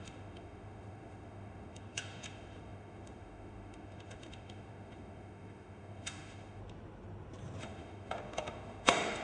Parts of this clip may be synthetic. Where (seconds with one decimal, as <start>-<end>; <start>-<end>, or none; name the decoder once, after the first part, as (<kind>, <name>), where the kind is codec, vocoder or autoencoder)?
0.0-6.6 (autoencoder, DAC-VAE); 7.6-9.2